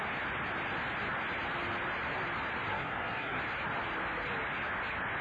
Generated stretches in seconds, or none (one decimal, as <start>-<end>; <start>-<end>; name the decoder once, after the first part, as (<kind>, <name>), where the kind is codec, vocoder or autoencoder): 2.7-3.4 (codec, SNAC)